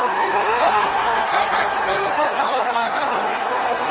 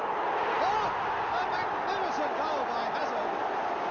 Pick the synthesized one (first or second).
first